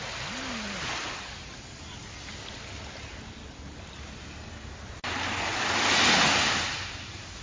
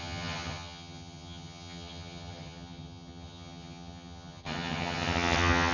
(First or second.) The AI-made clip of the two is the second